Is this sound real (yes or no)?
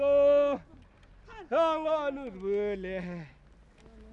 yes